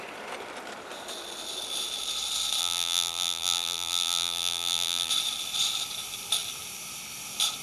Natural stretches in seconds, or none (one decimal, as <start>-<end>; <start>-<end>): 0.0-2.6; 5.1-7.6